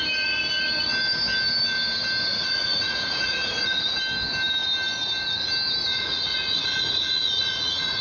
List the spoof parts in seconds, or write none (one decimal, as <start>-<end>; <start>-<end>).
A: 2.3-4.0; 5.9-8.0